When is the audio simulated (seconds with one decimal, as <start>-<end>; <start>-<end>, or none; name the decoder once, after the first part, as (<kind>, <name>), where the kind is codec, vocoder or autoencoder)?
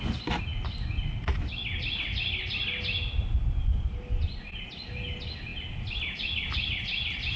none